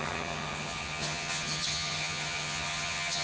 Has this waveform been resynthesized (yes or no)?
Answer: yes